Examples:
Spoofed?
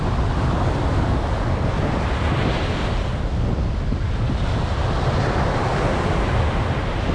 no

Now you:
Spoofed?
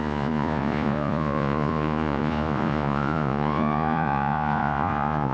yes